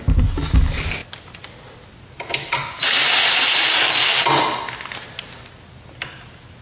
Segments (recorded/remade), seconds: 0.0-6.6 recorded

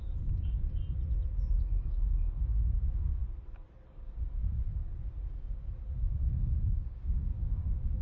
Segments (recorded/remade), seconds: 0.0-0.8 remade; 0.8-1.6 recorded; 1.6-3.2 remade; 3.2-3.9 recorded; 3.9-8.0 remade

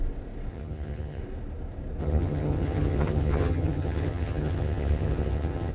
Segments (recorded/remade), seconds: 0.0-0.5 recorded; 0.5-1.2 remade; 1.2-2.0 recorded; 2.0-5.7 remade

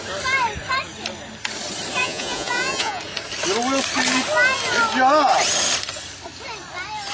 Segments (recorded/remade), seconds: 0.0-2.0 recorded; 2.0-3.0 remade; 3.0-7.1 recorded

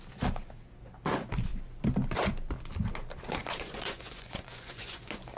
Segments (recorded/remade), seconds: 0.0-3.4 recorded; 3.4-5.4 remade

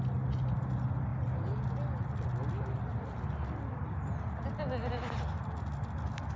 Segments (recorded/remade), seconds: 0.0-6.4 recorded